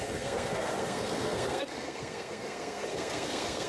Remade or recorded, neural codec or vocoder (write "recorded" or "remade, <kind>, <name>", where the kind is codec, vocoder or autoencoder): remade, codec, SNAC